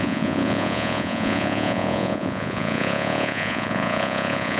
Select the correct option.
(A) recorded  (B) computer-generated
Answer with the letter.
B